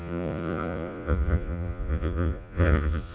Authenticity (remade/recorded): remade